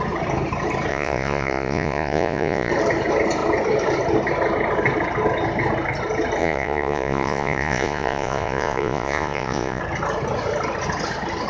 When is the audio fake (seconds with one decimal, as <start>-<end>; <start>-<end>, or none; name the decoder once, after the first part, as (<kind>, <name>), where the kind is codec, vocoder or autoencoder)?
0.9-2.7 (vocoder, Vocos); 6.4-9.8